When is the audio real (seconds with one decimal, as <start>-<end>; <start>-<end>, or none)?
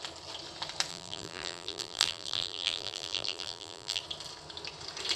0.0-0.9; 4.0-5.2